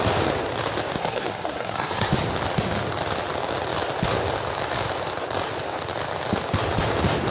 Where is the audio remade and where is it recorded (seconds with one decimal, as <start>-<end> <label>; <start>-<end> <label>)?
0.0-1.0 recorded; 1.0-2.1 remade; 2.1-7.3 recorded